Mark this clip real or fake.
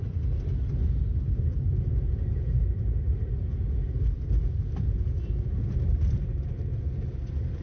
real